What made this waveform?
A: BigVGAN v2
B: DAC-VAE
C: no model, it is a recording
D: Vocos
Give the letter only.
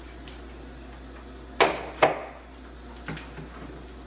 C